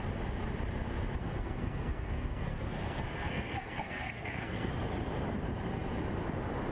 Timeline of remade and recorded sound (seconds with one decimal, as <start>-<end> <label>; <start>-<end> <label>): 0.0-1.2 recorded; 1.2-4.7 remade; 4.7-6.7 recorded